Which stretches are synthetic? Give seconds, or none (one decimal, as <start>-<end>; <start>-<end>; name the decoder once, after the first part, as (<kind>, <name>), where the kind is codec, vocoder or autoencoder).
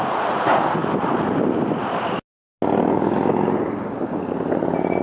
none